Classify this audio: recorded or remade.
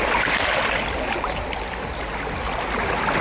recorded